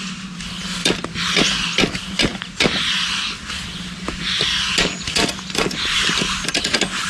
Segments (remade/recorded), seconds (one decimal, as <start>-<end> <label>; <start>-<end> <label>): 0.0-0.8 recorded; 0.8-1.7 remade; 1.7-7.1 recorded